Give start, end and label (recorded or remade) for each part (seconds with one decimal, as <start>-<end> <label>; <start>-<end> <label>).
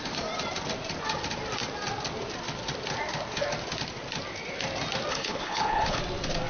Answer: 0.0-5.1 recorded; 5.1-6.0 remade; 6.0-6.5 recorded